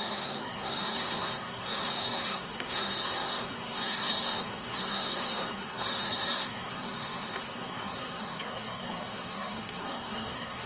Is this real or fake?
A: fake